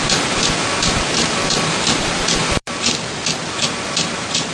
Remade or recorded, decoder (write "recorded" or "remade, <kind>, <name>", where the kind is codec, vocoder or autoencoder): remade, vocoder, BigVGAN v2